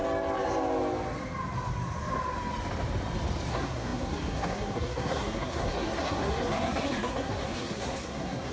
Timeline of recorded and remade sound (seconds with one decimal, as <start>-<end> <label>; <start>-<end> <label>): 0.0-3.5 recorded; 3.5-8.5 remade

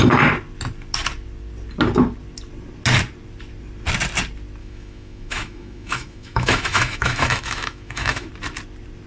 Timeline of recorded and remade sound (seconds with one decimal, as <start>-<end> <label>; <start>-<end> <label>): 0.0-4.6 recorded; 4.6-8.3 remade; 8.3-9.1 recorded

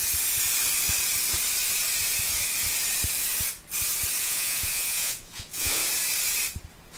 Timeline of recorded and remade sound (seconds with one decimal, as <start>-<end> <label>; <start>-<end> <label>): 0.0-4.2 recorded; 4.2-5.8 remade; 5.8-7.0 recorded

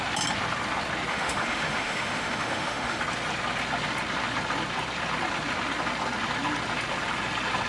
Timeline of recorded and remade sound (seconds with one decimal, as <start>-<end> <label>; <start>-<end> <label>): 0.0-1.1 recorded; 1.1-3.0 remade; 3.0-7.7 recorded

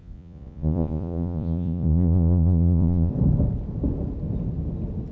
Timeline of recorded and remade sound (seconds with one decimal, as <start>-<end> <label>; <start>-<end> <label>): 0.0-3.1 remade; 3.1-5.1 recorded

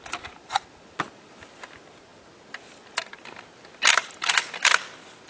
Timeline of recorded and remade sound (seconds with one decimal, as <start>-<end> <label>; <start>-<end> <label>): 0.0-5.3 recorded

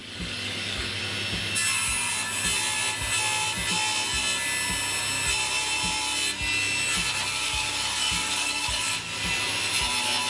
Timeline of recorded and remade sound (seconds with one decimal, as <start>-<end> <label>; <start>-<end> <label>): 0.0-1.0 remade; 1.0-7.3 recorded; 7.3-8.9 remade; 8.9-10.3 recorded